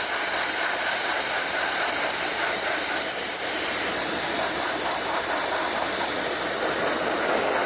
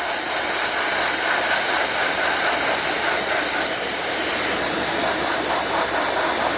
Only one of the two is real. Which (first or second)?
second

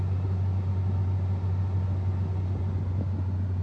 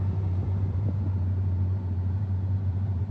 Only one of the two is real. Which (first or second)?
first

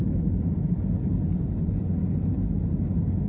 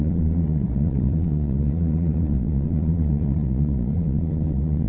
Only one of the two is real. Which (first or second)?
first